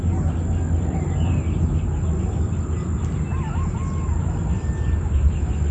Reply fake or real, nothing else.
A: real